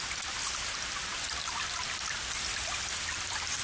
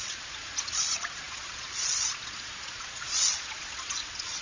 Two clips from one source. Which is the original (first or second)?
first